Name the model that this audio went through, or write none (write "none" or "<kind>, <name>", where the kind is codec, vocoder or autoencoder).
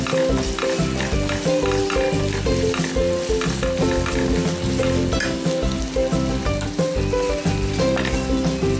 none